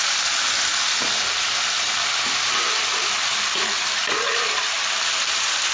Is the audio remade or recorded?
remade